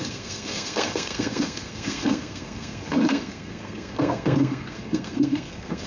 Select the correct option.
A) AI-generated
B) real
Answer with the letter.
A